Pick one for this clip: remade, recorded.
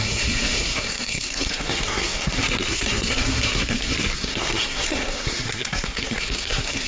remade